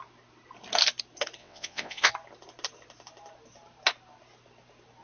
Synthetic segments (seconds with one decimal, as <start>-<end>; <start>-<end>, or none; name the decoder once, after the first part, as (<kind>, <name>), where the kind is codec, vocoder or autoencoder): 1.4-2.1 (vocoder, WaveNeXt)